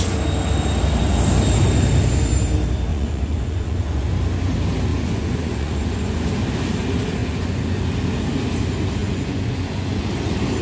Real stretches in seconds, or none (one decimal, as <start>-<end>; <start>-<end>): 0.0-2.9; 4.1-4.9; 6.3-7.2; 7.8-9.0; 10.1-10.6